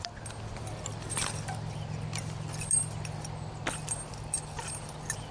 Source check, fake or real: real